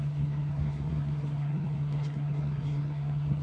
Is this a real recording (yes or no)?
no